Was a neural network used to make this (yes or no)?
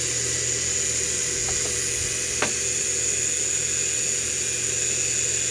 no